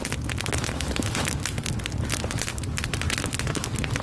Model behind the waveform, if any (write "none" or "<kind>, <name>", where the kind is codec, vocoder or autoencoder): none